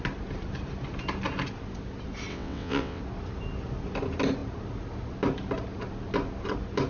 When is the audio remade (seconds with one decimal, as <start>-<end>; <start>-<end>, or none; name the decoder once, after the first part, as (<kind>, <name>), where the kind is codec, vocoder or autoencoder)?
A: 2.3-3.0 (vocoder, WaveNeXt)